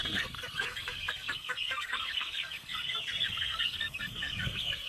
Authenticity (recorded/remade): remade